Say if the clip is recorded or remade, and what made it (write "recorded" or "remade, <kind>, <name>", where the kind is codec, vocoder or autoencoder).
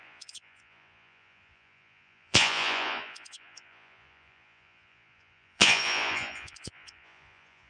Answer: remade, vocoder, Vocos